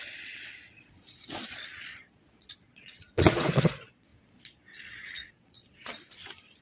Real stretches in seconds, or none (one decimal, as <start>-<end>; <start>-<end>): 5.9-6.6